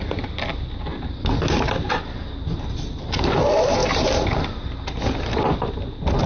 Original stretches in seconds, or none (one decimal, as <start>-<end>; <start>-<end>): 0.0-3.8